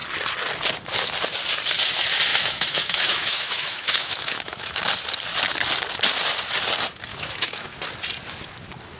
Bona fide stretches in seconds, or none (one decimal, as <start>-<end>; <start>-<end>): 0.0-2.3; 4.8-7.1; 7.8-9.0